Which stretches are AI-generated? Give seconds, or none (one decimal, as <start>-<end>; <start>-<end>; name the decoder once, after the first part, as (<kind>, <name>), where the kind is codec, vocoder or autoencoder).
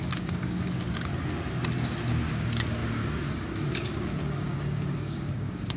0.0-1.1 (codec, DAC); 2.3-5.8